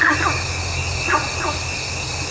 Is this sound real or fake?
real